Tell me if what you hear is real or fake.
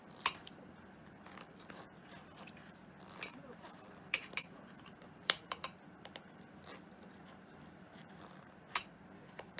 fake